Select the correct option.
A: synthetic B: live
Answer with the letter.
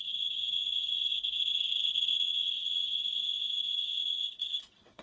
A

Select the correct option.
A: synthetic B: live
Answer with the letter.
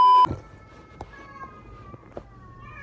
B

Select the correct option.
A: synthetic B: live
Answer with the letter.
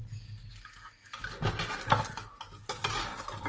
B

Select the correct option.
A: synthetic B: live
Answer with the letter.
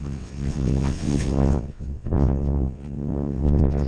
A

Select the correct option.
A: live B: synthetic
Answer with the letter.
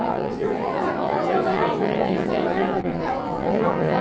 B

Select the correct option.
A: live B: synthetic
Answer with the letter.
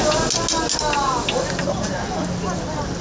A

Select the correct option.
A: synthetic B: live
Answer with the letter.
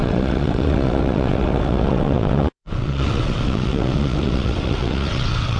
A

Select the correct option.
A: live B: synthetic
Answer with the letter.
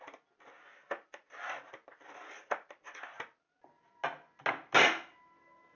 A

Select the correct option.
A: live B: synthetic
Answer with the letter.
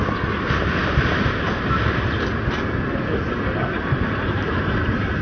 A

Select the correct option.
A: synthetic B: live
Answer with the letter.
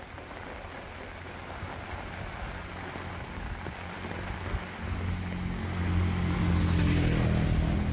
B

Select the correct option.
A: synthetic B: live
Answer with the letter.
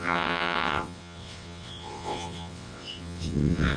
A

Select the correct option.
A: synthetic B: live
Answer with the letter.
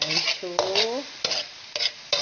B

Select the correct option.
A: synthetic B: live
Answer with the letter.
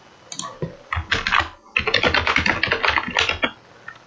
B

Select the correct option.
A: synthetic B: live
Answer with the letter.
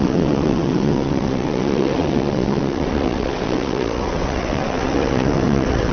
A